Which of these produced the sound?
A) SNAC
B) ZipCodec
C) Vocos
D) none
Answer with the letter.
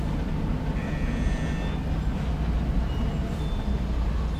D